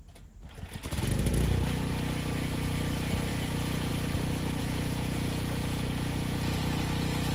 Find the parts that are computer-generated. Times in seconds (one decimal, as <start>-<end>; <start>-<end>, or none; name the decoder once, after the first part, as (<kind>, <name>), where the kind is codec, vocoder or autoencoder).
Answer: 3.3-3.9 (vocoder, Vocos); 4.6-6.6